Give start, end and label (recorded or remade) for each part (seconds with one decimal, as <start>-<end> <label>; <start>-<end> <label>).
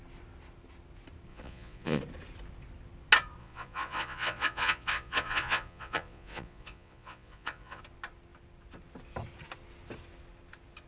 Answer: 0.0-1.3 recorded; 1.3-2.0 remade; 2.0-3.4 recorded; 3.4-7.8 remade; 7.8-10.9 recorded